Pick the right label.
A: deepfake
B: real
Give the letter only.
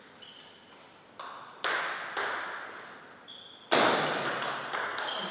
B